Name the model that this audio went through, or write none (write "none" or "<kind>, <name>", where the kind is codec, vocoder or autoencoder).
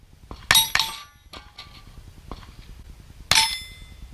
none